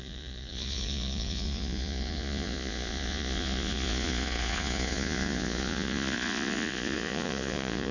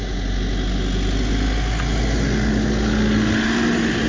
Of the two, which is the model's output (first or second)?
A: first